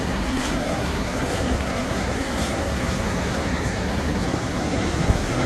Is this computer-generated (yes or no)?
yes